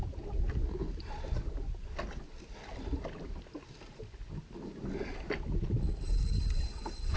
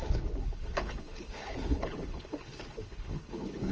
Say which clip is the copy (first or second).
second